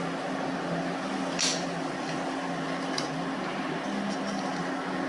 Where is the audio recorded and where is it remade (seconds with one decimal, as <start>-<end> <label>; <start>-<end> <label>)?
0.0-5.1 recorded